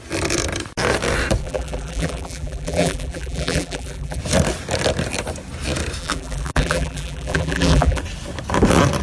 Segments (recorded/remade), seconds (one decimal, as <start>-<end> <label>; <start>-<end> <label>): 0.0-1.4 recorded; 1.4-4.2 remade; 4.2-6.0 recorded; 6.0-8.0 remade; 8.0-9.0 recorded